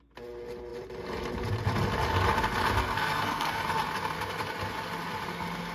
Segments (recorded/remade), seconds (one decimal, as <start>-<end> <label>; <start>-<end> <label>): 0.0-2.8 recorded; 2.8-3.6 remade; 3.6-5.7 recorded